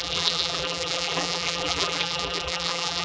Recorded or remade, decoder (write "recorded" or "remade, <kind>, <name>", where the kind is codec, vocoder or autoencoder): remade, vocoder, BigVGAN v2